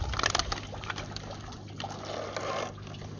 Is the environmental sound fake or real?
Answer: real